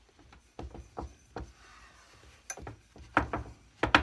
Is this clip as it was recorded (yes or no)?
yes